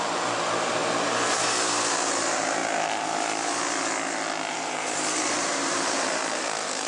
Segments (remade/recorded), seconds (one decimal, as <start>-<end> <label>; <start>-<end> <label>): 0.0-0.8 remade; 0.8-1.4 recorded; 1.4-2.6 remade; 2.6-4.5 recorded; 4.5-6.9 remade

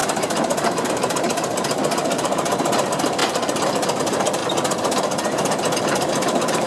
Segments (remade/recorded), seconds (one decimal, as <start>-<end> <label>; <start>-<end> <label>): 0.0-4.4 remade; 4.4-5.8 recorded; 5.8-6.7 remade